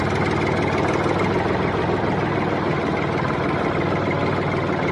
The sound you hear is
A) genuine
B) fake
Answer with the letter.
A